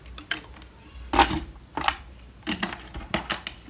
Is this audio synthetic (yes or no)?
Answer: no